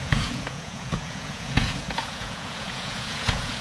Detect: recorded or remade remade